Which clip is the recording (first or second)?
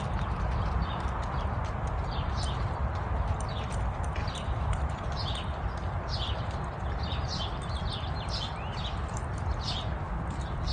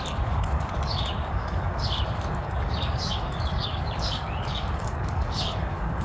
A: first